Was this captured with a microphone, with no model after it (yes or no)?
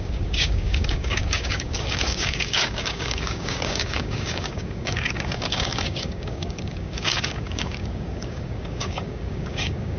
no